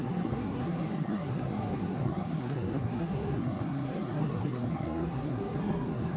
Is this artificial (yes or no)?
yes